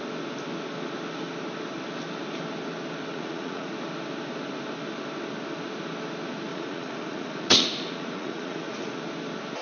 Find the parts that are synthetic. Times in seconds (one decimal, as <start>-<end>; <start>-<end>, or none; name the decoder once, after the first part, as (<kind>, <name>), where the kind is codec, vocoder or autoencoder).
3.1-3.7 (vocoder, Vocos); 6.5-9.0